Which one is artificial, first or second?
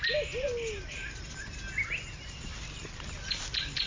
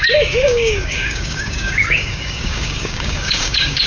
second